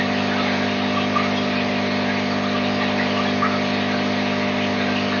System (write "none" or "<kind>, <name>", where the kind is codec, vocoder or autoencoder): none